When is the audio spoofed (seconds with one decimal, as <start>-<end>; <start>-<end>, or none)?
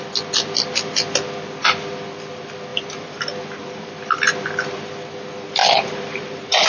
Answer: 2.7-3.2; 3.6-4.3; 5.6-6.7